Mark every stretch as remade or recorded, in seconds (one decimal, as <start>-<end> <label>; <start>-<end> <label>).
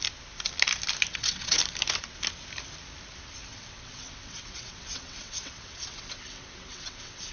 0.0-1.1 recorded; 1.1-1.6 remade; 1.6-3.5 recorded; 3.5-7.3 remade